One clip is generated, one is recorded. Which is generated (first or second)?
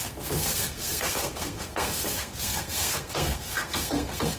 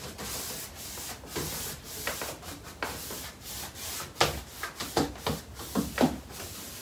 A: first